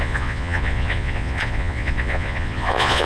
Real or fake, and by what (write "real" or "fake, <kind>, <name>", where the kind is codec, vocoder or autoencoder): fake, vocoder, Vocos